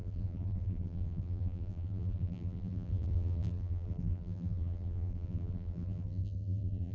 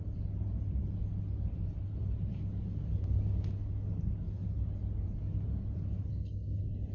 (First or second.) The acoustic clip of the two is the second